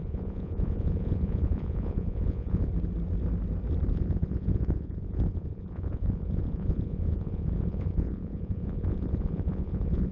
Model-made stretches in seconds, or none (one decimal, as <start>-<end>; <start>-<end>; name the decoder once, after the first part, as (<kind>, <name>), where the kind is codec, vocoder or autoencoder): 0.0-2.7 (vocoder, Vocos); 3.9-10.1